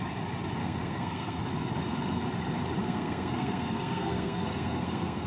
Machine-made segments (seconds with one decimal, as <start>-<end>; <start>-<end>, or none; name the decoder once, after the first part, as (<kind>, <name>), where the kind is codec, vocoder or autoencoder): 0.6-1.4 (codec, SNAC); 2.8-5.3